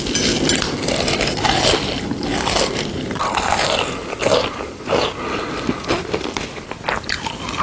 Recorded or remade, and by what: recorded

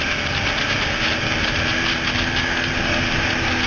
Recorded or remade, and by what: recorded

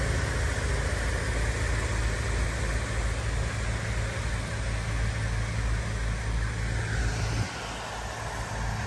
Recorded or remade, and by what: recorded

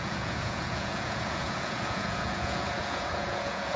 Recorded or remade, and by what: remade, vocoder, Vocos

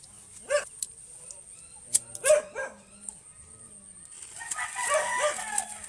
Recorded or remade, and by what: recorded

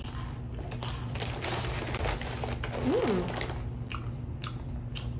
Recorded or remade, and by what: recorded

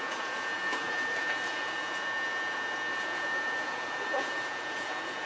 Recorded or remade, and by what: remade, vocoder, Vocos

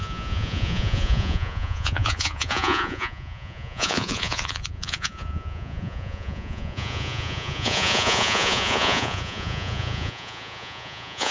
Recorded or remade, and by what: remade, vocoder, Vocos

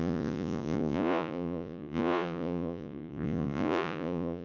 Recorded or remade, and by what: remade, vocoder, Vocos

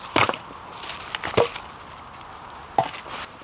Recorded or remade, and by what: recorded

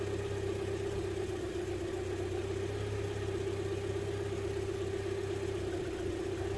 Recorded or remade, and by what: recorded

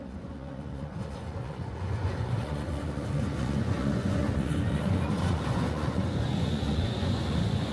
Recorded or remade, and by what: remade, vocoder, Vocos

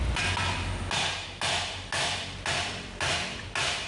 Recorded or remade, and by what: recorded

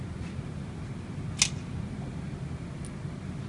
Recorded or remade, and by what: recorded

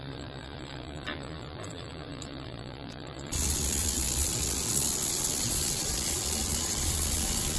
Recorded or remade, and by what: remade, vocoder, Vocos